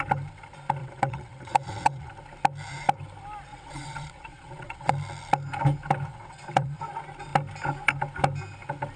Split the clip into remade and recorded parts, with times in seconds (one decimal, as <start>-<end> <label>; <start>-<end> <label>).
0.0-0.8 recorded; 0.8-2.1 remade; 2.1-3.5 recorded; 3.5-4.9 remade; 4.9-6.1 recorded; 6.1-6.8 remade; 6.8-9.0 recorded